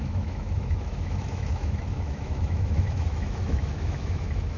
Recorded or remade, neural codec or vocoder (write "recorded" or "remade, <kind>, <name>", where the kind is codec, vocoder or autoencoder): remade, autoencoder, DAC-VAE